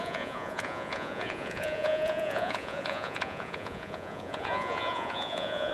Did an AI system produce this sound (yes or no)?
yes